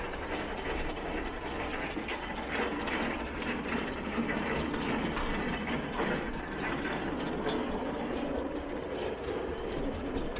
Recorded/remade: recorded